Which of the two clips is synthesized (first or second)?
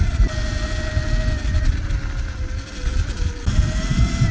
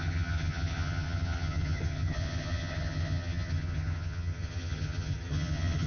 second